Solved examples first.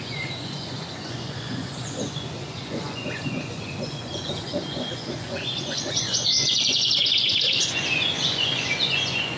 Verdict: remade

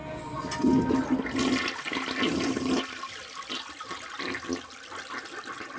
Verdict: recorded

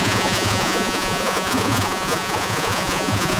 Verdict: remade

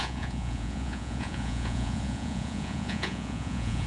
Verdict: remade